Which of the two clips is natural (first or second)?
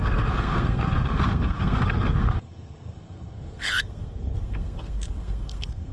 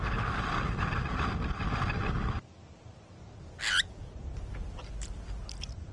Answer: second